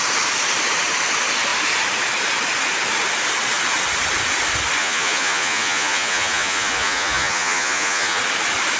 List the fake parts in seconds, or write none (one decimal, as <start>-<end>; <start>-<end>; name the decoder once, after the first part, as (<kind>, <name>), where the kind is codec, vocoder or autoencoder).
4.8-8.2 (vocoder, Vocos)